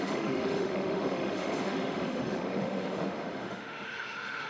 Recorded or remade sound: remade